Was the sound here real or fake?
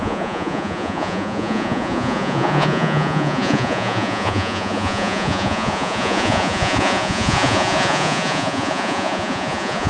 fake